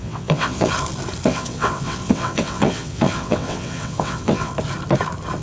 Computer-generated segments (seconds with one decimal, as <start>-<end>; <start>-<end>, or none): 0.0-0.7; 1.3-4.5